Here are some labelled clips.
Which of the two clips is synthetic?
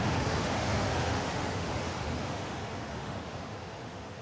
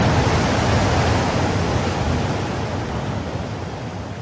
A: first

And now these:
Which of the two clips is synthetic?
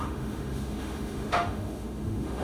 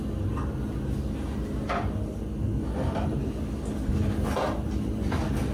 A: first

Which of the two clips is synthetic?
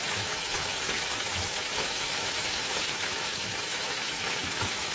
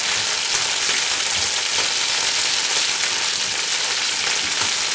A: first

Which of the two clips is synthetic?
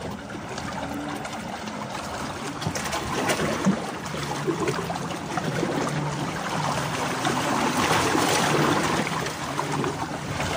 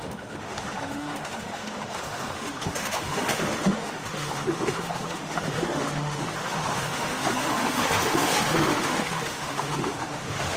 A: second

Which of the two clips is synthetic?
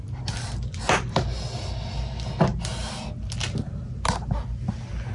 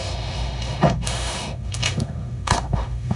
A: second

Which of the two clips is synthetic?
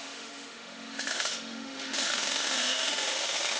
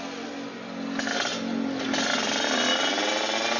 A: first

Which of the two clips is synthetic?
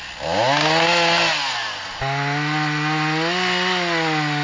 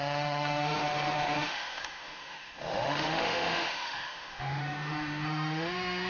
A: second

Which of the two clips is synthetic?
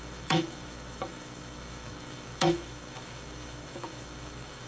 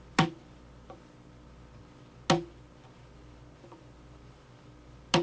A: first